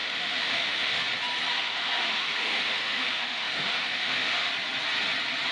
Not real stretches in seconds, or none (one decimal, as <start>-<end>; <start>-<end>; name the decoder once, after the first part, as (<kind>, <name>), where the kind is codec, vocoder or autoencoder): 0.0-1.0 (autoencoder, DAC-VAE); 1.5-4.5